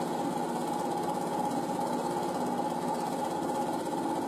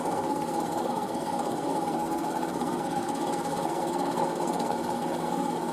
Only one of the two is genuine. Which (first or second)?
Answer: first